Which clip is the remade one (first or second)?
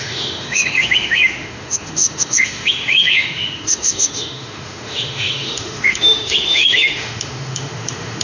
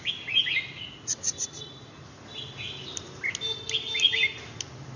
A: first